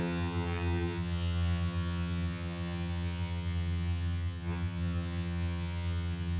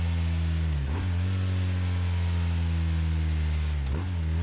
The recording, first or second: second